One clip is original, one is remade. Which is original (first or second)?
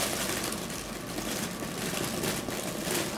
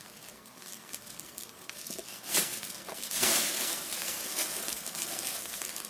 first